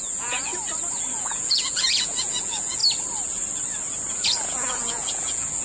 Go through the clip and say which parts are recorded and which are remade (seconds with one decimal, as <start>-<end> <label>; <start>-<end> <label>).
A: 0.0-0.5 remade; 0.5-1.1 recorded; 1.1-2.8 remade; 2.8-4.1 recorded; 4.1-5.6 remade